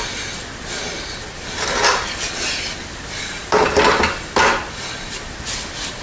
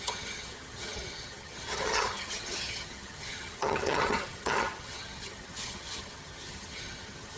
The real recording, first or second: first